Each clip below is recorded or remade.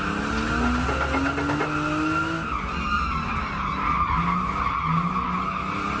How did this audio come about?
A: recorded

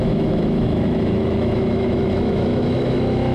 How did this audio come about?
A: remade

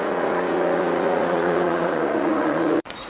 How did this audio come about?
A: remade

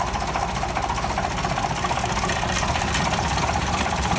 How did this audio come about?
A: recorded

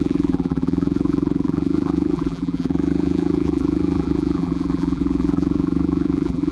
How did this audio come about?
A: remade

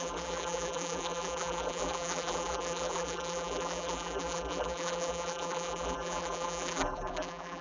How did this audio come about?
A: remade